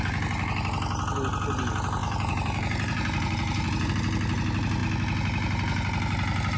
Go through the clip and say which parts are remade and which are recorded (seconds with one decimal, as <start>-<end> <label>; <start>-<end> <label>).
0.0-2.0 recorded; 2.0-3.9 remade; 3.9-6.6 recorded

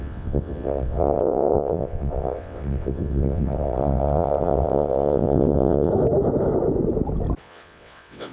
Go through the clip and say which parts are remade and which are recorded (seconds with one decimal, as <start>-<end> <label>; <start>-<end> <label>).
0.0-5.9 remade; 5.9-7.4 recorded; 7.4-8.3 remade

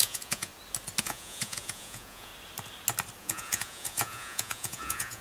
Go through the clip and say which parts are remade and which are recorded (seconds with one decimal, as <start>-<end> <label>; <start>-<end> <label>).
0.0-0.5 remade; 0.5-1.0 recorded; 1.0-2.3 remade; 2.3-3.2 recorded; 3.2-5.2 remade